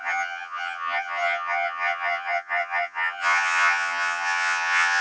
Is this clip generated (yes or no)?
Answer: yes